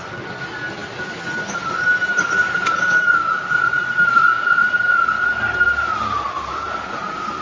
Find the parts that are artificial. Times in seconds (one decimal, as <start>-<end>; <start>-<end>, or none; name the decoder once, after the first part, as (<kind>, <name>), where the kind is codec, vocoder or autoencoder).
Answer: none